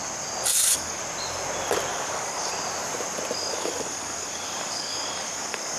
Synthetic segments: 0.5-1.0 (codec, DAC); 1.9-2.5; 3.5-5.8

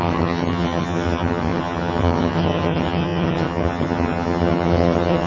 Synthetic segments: 0.0-5.3 (vocoder, HiFi-GAN)

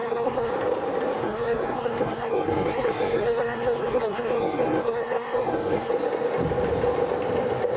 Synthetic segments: 0.0-0.5 (codec, SNAC); 1.2-5.9

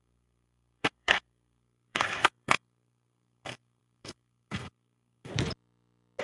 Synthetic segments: 0.0-5.3 (codec, SNAC)

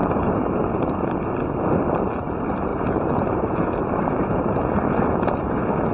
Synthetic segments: 0.0-0.9 (vocoder, BigVGAN v2); 2.7-4.5